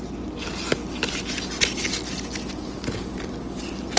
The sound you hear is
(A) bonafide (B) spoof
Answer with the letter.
A